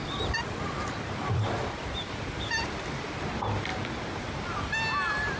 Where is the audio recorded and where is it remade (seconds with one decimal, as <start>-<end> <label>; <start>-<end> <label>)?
0.0-3.1 remade; 3.1-5.4 recorded